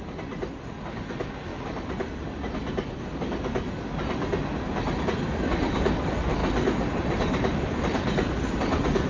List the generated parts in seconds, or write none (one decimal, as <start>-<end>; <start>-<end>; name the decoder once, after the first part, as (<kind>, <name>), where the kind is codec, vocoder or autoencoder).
none